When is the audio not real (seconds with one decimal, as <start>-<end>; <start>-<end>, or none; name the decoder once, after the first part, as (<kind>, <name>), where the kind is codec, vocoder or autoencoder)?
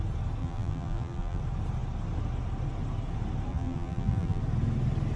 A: 0.4-1.4 (vocoder, BigVGAN v2); 3.5-4.4